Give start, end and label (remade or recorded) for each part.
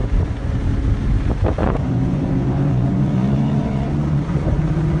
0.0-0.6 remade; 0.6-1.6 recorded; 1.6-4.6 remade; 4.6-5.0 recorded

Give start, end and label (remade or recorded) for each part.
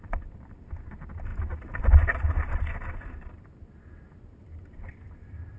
0.0-5.6 recorded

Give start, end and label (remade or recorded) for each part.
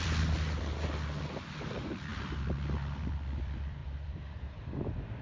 0.0-5.2 remade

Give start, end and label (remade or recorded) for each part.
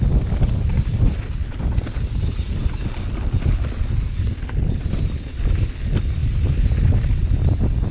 0.0-7.9 recorded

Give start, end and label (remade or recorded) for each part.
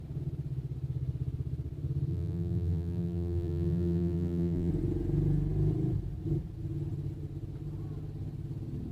0.0-2.1 recorded; 2.1-4.7 remade; 4.7-8.9 recorded